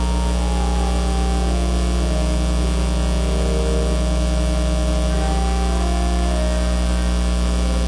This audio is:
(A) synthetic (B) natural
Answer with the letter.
B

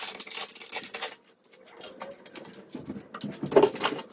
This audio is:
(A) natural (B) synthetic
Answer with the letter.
A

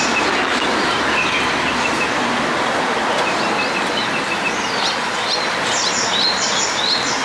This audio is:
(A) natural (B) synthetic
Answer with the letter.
B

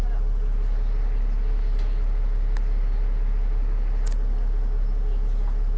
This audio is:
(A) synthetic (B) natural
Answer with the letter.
B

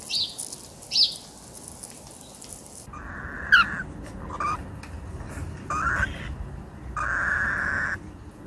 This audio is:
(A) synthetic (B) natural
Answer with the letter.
B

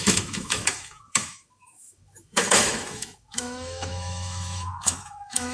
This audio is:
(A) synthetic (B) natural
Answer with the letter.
A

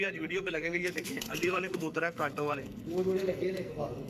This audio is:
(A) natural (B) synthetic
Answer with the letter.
B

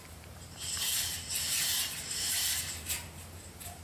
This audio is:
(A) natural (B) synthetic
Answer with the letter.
B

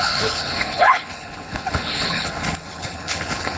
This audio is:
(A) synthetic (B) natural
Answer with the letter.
A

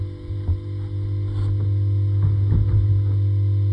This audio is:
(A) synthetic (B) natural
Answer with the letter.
B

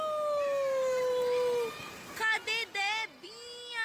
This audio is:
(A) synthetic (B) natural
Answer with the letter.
B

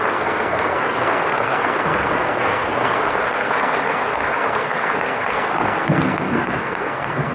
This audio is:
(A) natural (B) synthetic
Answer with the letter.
B